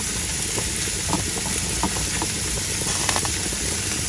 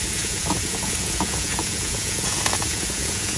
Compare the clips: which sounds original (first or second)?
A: first